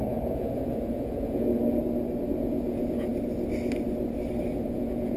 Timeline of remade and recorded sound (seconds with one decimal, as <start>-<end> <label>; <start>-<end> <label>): 0.0-1.5 remade; 1.5-2.3 recorded; 2.3-3.1 remade; 3.1-4.7 recorded; 4.7-5.2 remade